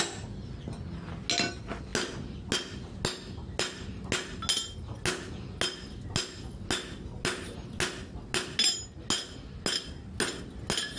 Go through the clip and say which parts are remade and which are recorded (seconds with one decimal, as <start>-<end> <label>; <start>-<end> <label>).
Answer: 0.0-11.0 recorded